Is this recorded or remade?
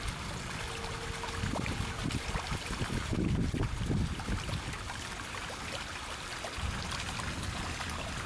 recorded